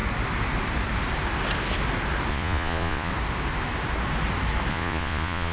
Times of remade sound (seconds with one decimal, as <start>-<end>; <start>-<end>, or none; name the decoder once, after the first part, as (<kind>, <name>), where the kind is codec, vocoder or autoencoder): 2.3-3.1 (vocoder, Vocos); 4.7-5.5